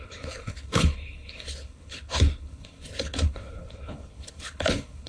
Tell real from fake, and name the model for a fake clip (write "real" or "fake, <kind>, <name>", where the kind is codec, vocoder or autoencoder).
fake, codec, HILCodec